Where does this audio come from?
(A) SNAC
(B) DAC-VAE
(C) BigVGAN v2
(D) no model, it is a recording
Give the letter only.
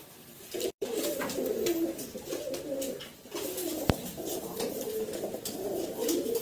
C